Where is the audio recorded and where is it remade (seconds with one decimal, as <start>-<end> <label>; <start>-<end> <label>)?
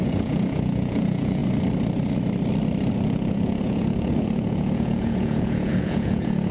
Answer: 0.0-1.4 remade; 1.4-2.9 recorded; 2.9-6.5 remade